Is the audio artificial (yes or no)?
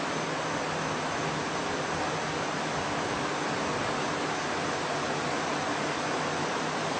no